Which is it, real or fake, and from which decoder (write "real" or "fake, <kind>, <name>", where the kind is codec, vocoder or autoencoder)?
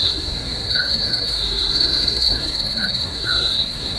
fake, codec, SNAC